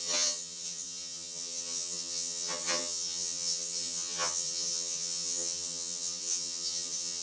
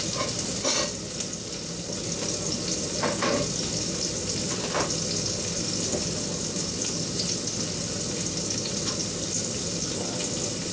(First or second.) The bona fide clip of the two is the second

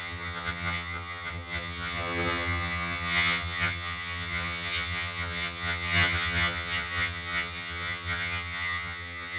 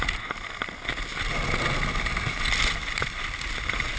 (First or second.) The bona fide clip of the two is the second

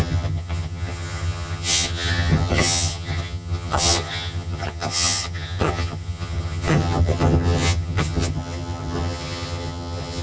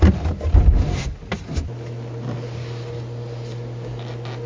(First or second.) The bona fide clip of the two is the second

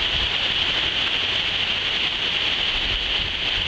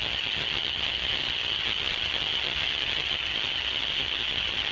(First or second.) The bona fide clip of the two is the first